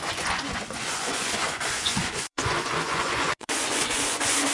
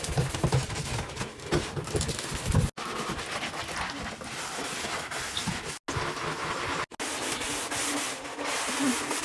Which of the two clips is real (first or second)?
second